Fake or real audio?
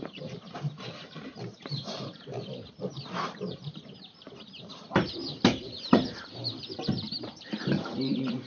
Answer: fake